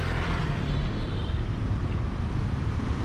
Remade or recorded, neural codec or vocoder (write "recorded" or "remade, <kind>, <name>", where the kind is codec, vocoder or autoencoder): recorded